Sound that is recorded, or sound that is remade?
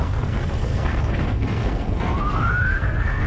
remade